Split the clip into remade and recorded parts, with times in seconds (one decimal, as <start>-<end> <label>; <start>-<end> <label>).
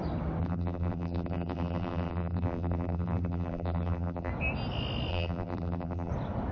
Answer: 0.0-0.4 recorded; 0.4-4.3 remade; 4.3-5.1 recorded; 5.1-6.1 remade; 6.1-6.5 recorded